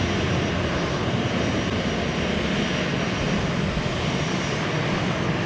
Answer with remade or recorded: recorded